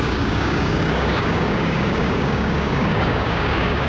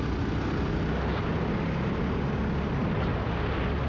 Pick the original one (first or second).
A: second